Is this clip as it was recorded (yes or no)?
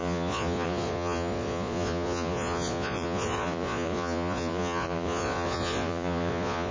no